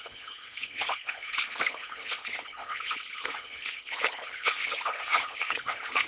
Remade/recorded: remade